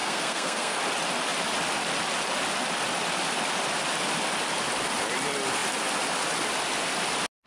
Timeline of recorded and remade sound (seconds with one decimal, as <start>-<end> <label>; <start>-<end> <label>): 0.0-0.8 remade; 0.8-7.5 recorded